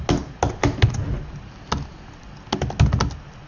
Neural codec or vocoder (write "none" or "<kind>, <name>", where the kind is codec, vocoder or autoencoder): none